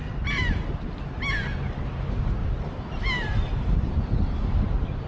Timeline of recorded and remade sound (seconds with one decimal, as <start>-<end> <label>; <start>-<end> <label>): 0.0-2.4 recorded; 2.4-4.0 remade; 4.0-5.1 recorded